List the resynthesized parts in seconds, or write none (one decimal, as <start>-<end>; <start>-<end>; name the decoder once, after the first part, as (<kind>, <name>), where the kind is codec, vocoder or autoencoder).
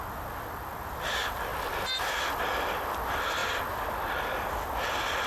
none